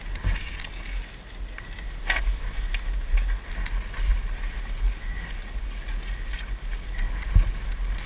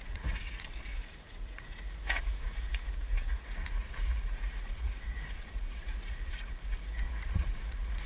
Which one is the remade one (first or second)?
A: second